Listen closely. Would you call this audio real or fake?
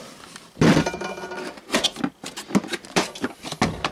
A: real